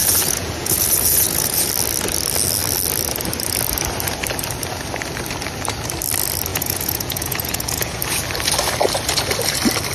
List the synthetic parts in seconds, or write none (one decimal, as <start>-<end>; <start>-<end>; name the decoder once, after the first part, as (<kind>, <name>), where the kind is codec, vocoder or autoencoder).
0.0-1.7 (vocoder, Vocos); 6.5-8.0